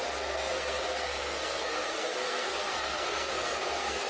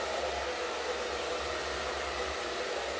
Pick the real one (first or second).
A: second